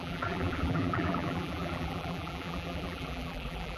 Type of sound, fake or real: fake